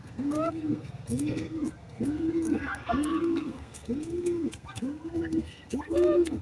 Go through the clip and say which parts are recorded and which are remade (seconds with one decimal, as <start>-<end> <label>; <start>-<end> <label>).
0.0-6.4 remade